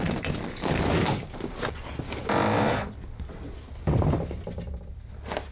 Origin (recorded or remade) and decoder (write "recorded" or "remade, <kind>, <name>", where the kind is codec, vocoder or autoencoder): recorded